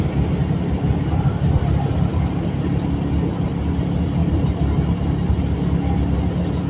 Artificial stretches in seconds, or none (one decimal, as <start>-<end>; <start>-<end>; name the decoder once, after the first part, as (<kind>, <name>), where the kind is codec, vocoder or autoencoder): none